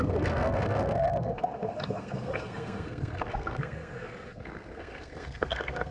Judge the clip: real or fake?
fake